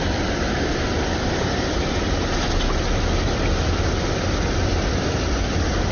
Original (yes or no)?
yes